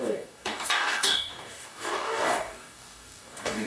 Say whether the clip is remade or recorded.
remade